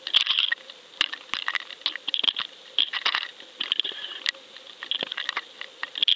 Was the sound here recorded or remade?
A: recorded